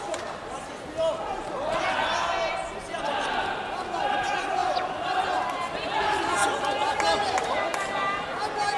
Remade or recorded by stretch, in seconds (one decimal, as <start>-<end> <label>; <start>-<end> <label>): 0.0-8.8 recorded